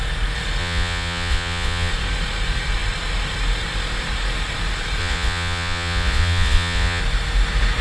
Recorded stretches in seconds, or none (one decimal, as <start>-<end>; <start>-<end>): 0.0-0.6; 1.9-5.0; 7.0-7.8